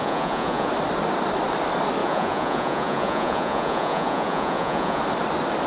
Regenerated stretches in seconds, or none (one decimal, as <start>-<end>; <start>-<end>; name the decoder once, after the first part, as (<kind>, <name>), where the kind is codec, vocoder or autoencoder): 0.0-0.7 (vocoder, Vocos); 2.0-5.0